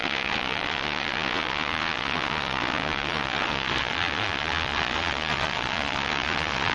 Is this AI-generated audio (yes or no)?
yes